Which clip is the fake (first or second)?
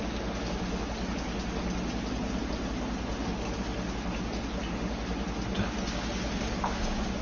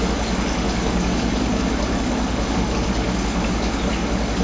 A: second